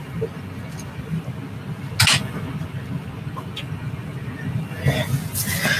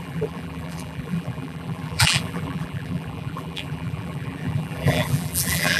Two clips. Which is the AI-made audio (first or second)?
second